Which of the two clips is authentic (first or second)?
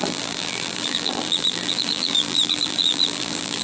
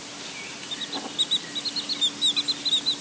second